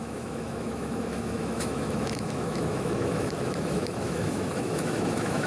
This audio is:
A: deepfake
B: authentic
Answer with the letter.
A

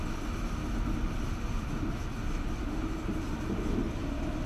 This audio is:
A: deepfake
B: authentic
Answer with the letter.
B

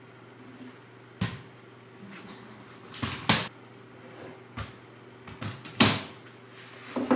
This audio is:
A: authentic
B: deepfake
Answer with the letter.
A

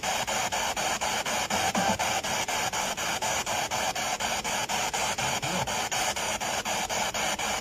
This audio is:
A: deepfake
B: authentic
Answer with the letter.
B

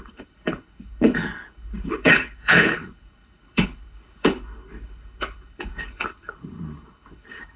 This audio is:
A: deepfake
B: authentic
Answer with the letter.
A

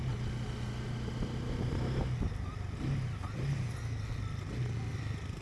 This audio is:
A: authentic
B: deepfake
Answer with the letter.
A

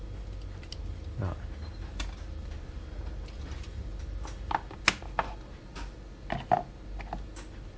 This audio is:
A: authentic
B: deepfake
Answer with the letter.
A